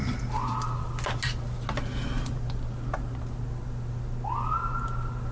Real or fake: real